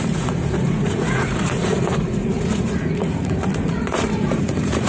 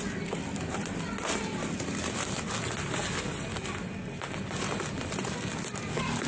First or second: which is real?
second